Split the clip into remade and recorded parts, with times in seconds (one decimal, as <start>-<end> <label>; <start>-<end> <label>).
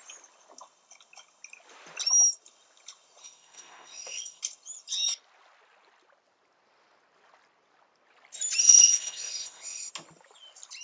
0.0-3.2 recorded; 3.2-4.4 remade; 4.4-8.6 recorded; 8.6-9.9 remade; 9.9-10.8 recorded